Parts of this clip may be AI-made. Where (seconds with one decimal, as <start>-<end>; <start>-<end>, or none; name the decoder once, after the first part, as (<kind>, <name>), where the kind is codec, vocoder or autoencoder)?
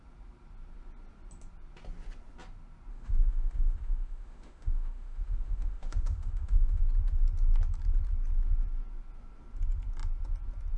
2.9-6.8 (autoencoder, DAC-VAE)